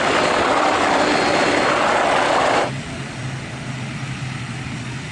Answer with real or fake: real